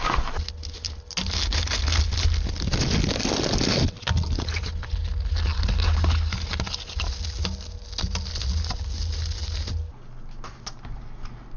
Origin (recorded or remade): recorded